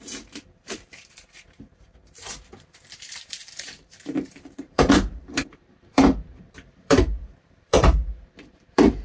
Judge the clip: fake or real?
fake